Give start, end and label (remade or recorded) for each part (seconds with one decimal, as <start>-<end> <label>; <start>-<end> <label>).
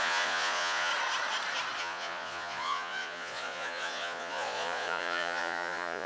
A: 0.0-0.9 remade; 0.9-1.8 recorded; 1.8-6.1 remade